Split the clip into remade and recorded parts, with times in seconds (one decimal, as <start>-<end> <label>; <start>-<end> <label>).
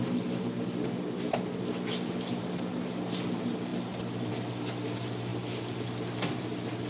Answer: 0.0-6.9 recorded